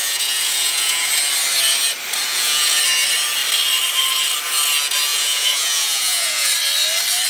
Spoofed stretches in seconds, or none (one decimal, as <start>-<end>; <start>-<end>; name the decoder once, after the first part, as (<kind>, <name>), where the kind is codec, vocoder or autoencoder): 0.0-1.1 (vocoder, Vocos); 2.3-2.8; 5.1-6.5